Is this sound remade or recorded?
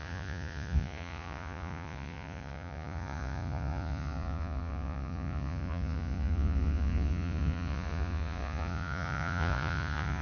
remade